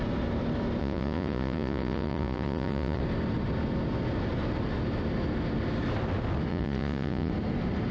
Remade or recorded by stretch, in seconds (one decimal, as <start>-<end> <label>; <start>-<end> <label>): 0.0-0.8 recorded; 0.8-3.0 remade; 3.0-6.5 recorded; 6.5-7.3 remade; 7.3-7.9 recorded